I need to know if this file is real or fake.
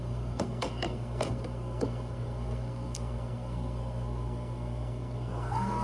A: fake